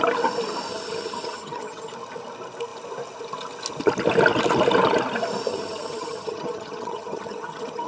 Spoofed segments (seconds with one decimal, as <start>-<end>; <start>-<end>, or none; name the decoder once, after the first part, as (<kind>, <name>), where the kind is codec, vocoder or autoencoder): 0.7-1.9 (vocoder, HiFi-GAN); 5.5-7.9